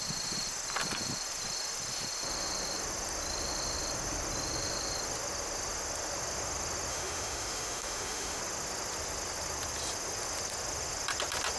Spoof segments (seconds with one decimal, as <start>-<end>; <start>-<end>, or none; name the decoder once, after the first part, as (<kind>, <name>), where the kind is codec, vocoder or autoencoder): 6.9-8.4 (autoencoder, DAC-VAE)